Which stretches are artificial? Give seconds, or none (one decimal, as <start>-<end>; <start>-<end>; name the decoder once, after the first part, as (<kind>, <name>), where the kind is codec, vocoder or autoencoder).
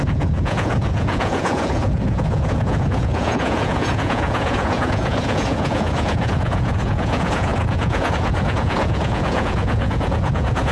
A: 0.0-10.7 (vocoder, Vocos)